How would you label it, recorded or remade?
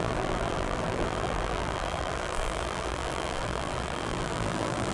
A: remade